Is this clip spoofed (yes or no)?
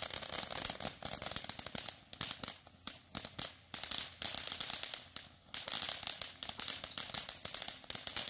no